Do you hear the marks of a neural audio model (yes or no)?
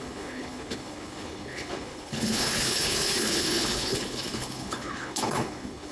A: yes